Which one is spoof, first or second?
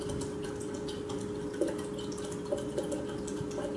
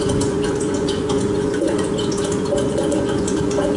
second